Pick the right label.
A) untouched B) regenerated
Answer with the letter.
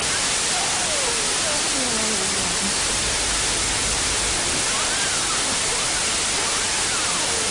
A